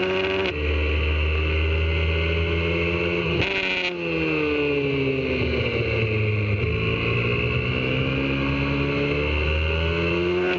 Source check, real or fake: real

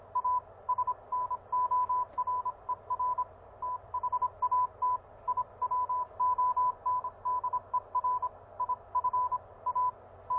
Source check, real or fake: real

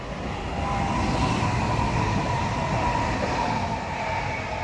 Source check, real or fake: real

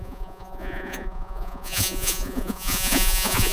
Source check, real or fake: fake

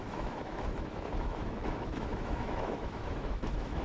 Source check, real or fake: fake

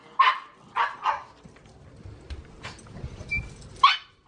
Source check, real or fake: real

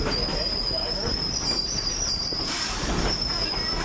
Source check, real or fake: fake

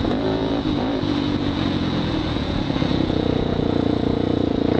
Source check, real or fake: fake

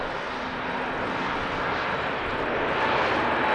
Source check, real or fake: real